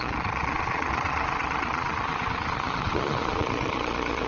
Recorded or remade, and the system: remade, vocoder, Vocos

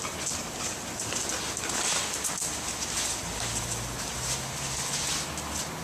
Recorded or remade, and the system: recorded